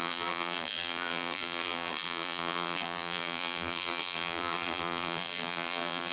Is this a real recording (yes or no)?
no